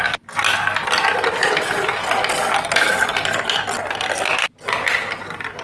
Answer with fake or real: real